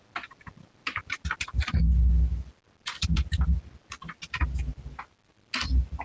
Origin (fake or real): real